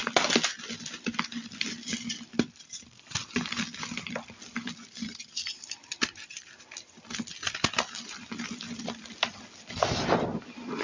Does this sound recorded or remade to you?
recorded